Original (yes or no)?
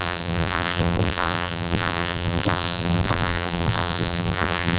no